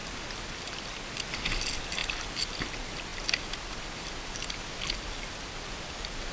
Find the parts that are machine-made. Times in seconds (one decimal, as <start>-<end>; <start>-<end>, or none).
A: none